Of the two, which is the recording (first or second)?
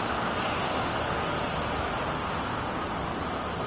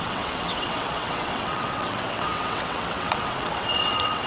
first